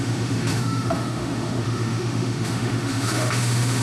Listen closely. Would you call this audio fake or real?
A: fake